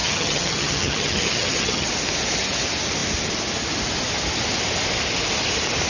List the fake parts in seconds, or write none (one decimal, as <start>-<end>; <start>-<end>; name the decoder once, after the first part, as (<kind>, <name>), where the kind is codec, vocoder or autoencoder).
0.0-1.9 (vocoder, HiFi-GAN)